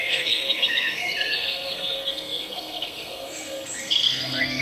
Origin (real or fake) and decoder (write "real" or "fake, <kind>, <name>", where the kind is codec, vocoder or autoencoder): fake, codec, SNAC